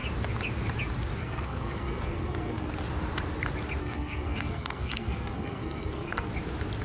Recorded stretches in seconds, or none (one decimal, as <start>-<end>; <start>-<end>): 0.0-1.2; 2.7-3.8; 6.3-6.8